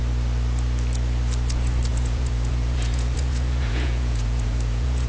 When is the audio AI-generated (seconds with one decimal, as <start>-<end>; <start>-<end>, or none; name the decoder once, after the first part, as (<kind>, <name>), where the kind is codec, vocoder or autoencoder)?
1.9-5.1 (vocoder, Vocos)